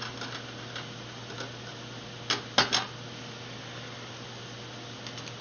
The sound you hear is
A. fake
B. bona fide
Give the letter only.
B